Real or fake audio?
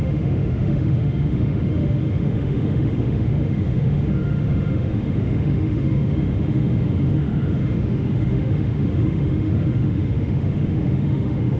fake